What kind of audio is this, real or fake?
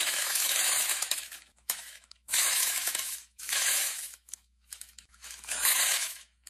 fake